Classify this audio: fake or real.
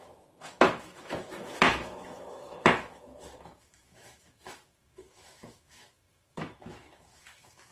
fake